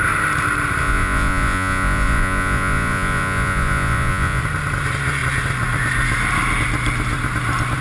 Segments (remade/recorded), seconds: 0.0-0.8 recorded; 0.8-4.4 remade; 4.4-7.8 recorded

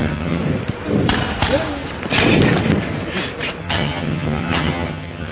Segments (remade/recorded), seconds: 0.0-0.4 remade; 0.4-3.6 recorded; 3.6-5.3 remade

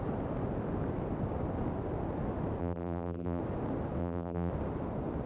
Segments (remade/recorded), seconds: 0.0-2.6 recorded; 2.6-3.4 remade; 3.4-4.0 recorded; 4.0-4.5 remade; 4.5-5.3 recorded

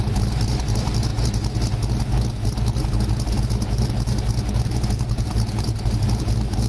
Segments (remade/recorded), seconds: 0.0-1.1 remade; 1.1-3.8 recorded; 3.8-6.7 remade